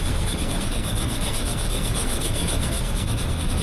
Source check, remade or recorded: remade